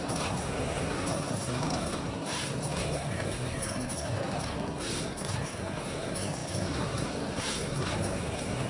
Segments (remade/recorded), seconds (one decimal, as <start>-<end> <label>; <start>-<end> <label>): 0.0-8.7 remade

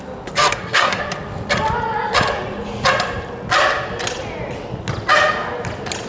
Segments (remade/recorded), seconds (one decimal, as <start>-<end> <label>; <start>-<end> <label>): 0.0-0.5 recorded; 0.5-1.0 remade; 1.0-6.1 recorded

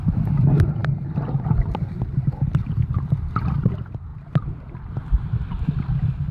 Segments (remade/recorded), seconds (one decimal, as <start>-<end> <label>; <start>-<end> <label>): 0.0-6.3 recorded

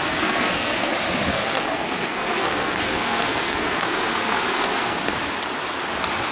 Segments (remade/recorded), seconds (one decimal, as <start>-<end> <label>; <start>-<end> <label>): 0.0-0.9 remade; 0.9-1.3 recorded; 1.3-5.1 remade; 5.1-6.3 recorded